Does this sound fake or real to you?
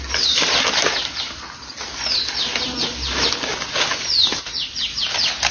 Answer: real